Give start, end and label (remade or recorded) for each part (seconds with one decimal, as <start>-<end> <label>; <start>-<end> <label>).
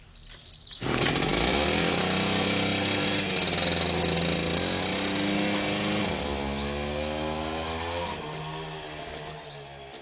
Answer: 0.0-10.0 recorded